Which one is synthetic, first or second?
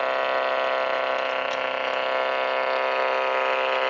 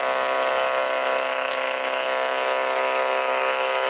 second